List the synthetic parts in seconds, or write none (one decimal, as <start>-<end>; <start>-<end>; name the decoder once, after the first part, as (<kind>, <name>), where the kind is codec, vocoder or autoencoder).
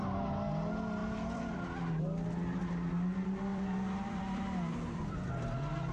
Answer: 1.0-2.0 (vocoder, BigVGAN v2); 3.5-5.3